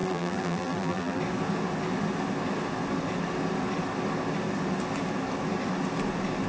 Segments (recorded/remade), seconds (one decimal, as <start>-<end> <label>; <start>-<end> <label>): 0.0-1.2 remade; 1.2-6.5 recorded